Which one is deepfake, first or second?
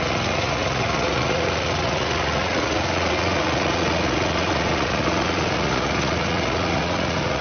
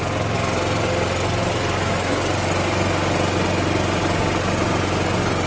first